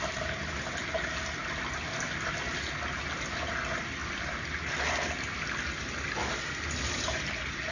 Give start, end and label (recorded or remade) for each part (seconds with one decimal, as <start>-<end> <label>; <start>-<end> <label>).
0.0-7.7 recorded